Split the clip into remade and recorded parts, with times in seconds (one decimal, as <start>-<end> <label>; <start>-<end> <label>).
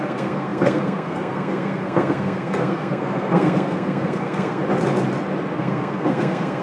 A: 0.0-4.6 remade; 4.6-5.6 recorded; 5.6-6.6 remade